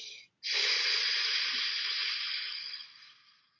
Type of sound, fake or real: real